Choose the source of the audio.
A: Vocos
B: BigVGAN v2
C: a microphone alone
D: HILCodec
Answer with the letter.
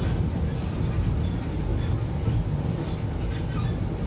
C